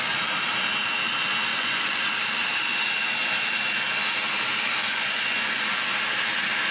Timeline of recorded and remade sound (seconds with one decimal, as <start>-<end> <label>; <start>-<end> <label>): 0.0-1.5 recorded; 1.5-2.0 remade; 2.0-4.8 recorded; 4.8-5.6 remade; 5.6-6.7 recorded